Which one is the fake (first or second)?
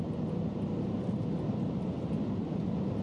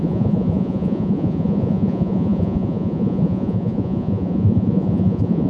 second